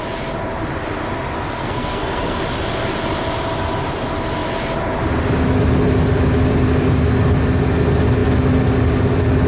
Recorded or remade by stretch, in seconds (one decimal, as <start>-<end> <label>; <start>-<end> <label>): 0.0-1.6 recorded; 1.6-2.4 remade; 2.4-9.5 recorded